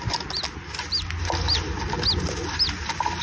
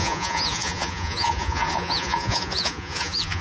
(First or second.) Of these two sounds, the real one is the first